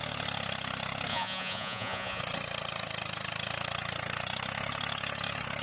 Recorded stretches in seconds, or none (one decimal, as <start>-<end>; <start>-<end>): 0.0-1.1; 2.2-5.6